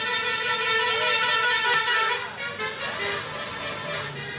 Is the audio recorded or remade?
recorded